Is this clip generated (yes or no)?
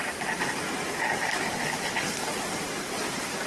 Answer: no